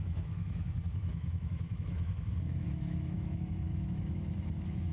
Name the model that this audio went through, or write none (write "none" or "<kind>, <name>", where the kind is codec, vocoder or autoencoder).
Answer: autoencoder, DAC-VAE